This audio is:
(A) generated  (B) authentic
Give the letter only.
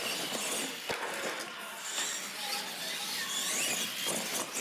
B